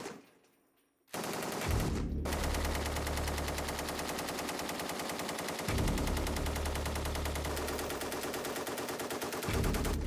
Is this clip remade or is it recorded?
recorded